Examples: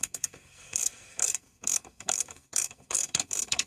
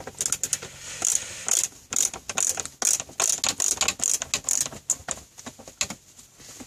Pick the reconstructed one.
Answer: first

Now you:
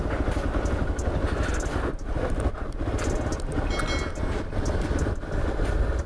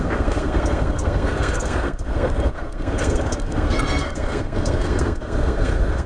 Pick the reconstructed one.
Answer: second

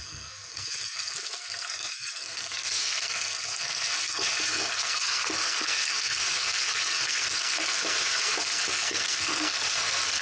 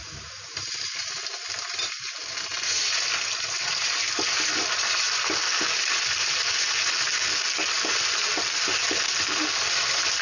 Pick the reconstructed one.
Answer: first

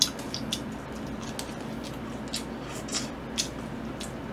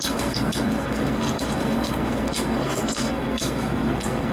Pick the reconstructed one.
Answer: second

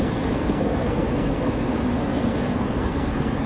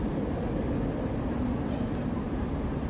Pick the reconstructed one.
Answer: first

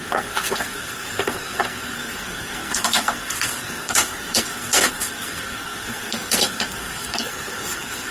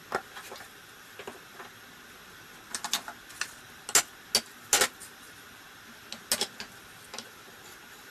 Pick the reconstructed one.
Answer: first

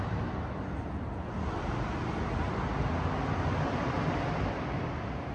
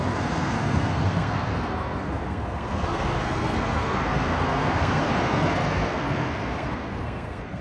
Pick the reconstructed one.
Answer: second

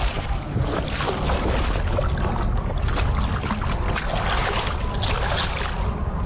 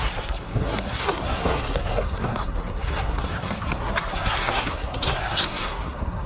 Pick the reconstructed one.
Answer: second